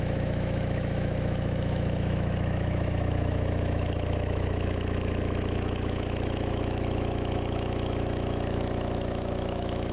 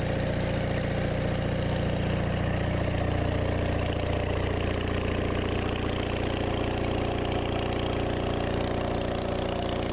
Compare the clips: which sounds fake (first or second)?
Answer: first